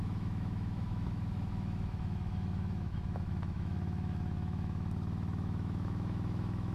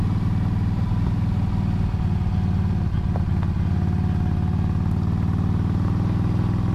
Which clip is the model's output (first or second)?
first